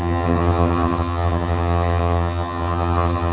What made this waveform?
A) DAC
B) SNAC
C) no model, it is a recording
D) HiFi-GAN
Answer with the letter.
D